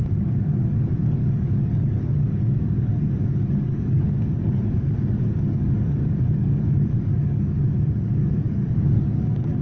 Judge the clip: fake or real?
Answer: fake